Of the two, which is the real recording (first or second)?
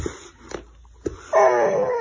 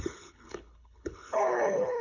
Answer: first